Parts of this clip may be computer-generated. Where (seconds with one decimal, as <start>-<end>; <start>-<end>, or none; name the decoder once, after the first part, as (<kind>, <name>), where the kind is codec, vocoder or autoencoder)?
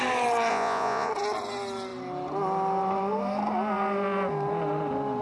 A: 0.5-1.1 (vocoder, Vocos)